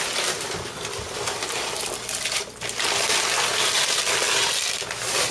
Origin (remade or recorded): recorded